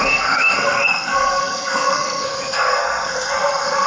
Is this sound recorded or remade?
remade